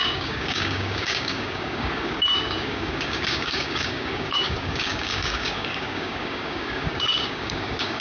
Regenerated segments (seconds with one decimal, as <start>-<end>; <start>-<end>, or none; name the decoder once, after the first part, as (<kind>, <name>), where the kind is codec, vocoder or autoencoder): 0.0-8.0 (codec, DAC)

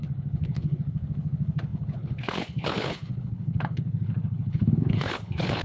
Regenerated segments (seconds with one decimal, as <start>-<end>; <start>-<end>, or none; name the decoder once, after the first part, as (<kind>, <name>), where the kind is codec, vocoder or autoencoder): 0.0-5.6 (codec, HILCodec)

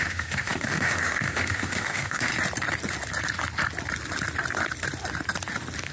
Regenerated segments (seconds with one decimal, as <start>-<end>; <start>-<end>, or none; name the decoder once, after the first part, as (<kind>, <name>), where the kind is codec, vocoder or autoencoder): 0.0-2.3 (autoencoder, DAC-VAE)